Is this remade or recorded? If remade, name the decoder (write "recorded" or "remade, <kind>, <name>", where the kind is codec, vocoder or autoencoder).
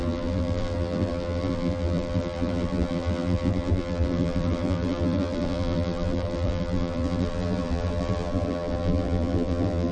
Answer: remade, vocoder, BigVGAN v2